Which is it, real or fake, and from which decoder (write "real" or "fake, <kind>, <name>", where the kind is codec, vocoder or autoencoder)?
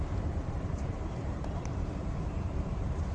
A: fake, vocoder, BigVGAN v2